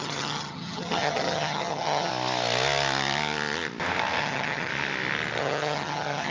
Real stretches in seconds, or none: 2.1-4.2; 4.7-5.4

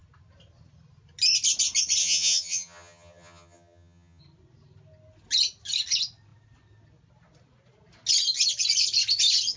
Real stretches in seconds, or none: 0.0-2.0; 4.2-9.6